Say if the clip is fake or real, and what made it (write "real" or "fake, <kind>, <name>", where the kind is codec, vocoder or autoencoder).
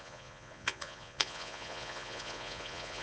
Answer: fake, vocoder, Vocos